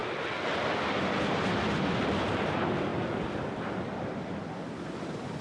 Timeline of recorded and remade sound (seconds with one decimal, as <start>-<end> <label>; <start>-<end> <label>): 0.0-2.9 recorded; 2.9-5.4 remade